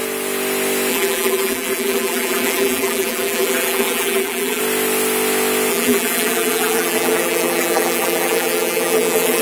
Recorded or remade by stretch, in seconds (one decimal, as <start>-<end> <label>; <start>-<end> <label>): 0.0-0.9 recorded; 0.9-4.6 remade; 4.6-5.7 recorded; 5.7-9.4 remade